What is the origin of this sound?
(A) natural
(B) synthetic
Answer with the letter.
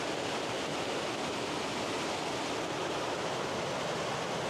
A